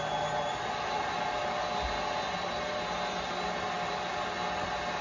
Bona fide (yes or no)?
yes